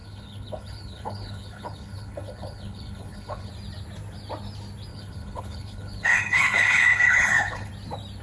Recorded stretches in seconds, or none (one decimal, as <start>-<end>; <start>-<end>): 3.5-4.9; 7.7-8.2